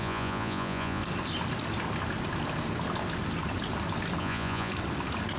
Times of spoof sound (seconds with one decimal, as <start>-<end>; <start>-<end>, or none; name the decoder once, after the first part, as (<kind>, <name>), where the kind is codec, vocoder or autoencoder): 0.0-1.0 (vocoder, Vocos); 4.2-4.7